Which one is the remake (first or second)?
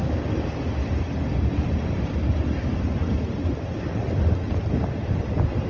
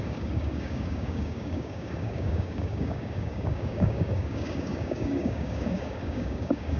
second